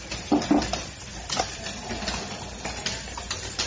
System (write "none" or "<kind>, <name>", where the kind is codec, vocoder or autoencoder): none